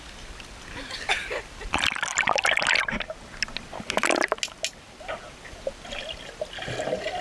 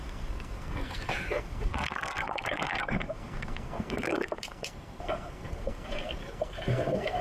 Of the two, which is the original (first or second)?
first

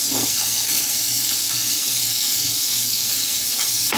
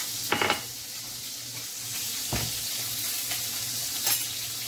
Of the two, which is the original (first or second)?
second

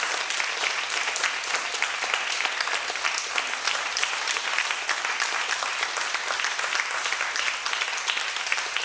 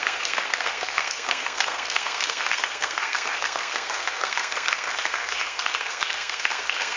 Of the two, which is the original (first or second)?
first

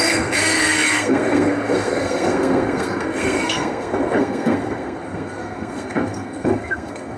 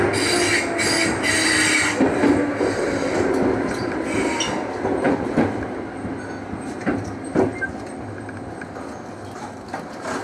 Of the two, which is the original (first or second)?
second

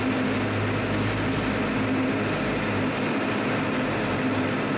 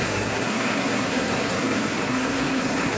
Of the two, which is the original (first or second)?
first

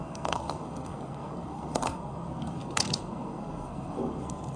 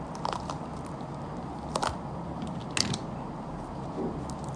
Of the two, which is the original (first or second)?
second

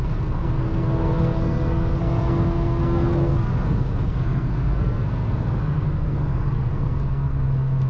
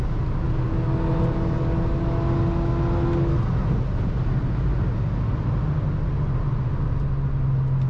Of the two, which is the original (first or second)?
second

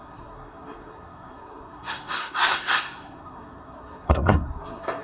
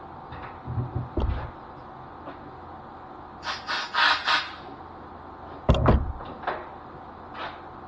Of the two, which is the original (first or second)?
second